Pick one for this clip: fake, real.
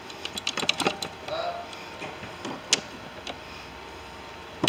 real